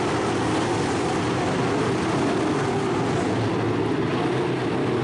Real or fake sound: real